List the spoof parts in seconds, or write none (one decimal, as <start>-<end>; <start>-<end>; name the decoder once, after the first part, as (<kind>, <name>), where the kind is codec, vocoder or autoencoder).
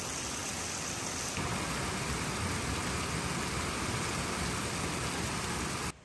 none